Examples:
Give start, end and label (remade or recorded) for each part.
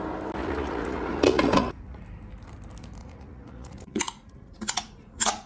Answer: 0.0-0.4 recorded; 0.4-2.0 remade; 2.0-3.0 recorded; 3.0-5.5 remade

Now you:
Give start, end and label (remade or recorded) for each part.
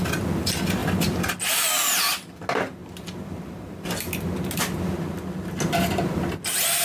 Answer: 0.0-6.8 recorded